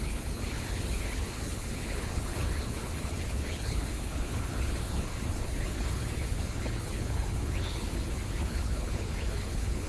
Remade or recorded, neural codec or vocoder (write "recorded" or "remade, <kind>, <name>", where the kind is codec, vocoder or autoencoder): remade, codec, HILCodec